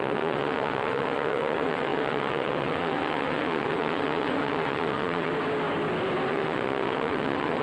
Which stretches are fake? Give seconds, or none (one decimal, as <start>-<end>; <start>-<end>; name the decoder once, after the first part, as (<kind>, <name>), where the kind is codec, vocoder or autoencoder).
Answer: 0.0-5.3 (vocoder, WaveNeXt); 6.3-7.6